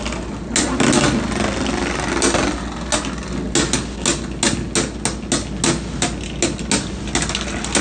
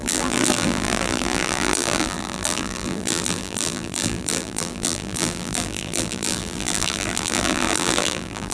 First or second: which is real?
first